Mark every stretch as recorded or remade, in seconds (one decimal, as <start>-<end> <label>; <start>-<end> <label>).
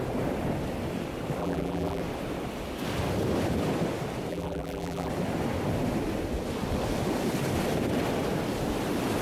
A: 0.0-1.4 recorded; 1.4-2.0 remade; 2.0-4.3 recorded; 4.3-5.1 remade; 5.1-9.2 recorded